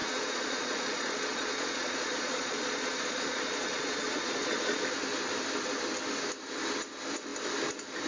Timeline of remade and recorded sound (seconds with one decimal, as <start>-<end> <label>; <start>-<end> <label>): 0.0-4.8 remade; 4.8-8.1 recorded